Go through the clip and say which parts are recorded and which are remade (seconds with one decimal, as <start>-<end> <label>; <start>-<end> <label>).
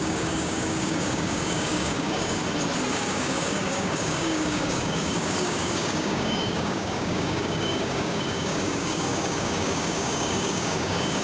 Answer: 0.0-2.4 remade; 2.4-2.9 recorded; 2.9-11.2 remade